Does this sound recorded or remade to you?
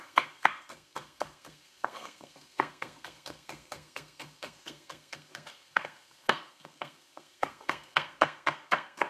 remade